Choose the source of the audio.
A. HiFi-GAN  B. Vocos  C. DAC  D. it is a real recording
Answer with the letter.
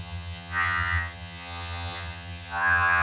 A